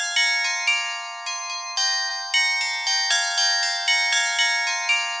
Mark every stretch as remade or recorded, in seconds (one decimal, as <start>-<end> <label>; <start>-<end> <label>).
0.0-5.2 recorded

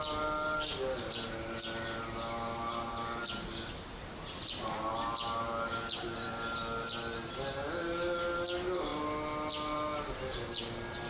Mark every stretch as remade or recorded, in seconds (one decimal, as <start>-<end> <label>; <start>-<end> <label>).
0.0-11.1 recorded

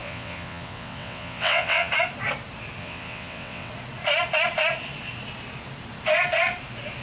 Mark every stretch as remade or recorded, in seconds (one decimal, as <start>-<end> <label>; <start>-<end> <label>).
0.0-1.9 remade; 1.9-2.8 recorded; 2.8-3.7 remade; 3.7-7.0 recorded

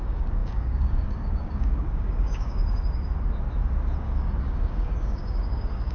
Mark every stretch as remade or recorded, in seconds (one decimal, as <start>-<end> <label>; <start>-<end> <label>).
0.0-2.6 remade; 2.6-4.0 recorded; 4.0-5.9 remade

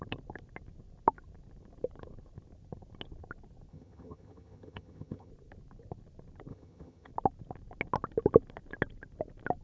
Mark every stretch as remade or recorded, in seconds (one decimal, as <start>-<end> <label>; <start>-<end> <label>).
0.0-3.7 recorded; 3.7-5.3 remade; 5.3-6.5 recorded; 6.5-7.1 remade; 7.1-9.6 recorded